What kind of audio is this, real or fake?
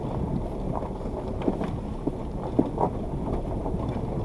real